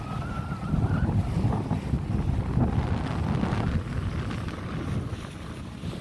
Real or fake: real